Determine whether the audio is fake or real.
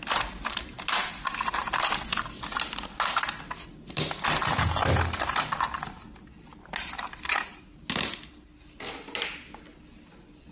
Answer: real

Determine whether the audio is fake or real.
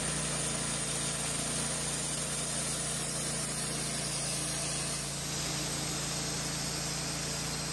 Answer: real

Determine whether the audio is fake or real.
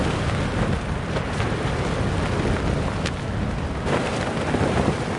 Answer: real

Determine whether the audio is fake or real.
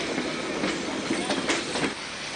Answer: real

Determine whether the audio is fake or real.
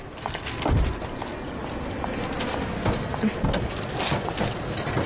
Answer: real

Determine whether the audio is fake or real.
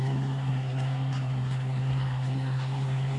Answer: fake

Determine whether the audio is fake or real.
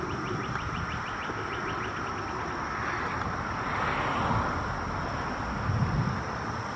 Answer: real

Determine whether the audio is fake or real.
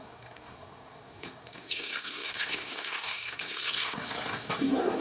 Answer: fake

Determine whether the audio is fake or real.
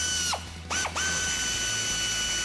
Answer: real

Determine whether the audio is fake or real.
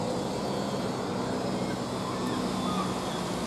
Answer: real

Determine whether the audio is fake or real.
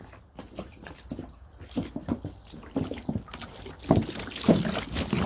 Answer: real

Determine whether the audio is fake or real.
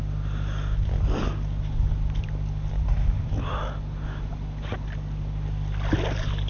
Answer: real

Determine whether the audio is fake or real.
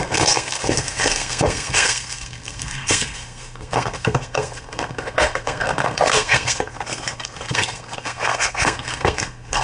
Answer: fake